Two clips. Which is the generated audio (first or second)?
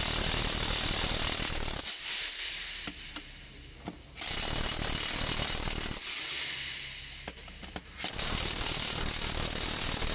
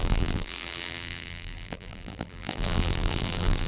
second